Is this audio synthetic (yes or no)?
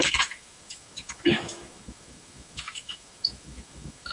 yes